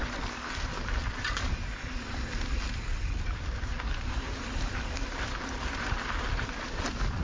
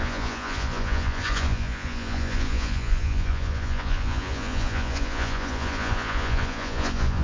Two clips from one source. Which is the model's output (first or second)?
second